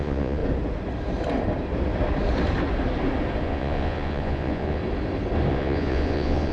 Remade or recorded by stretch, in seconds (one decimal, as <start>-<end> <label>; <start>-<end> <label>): 0.0-0.4 remade; 0.4-3.4 recorded; 3.4-4.8 remade; 4.8-5.5 recorded; 5.5-6.5 remade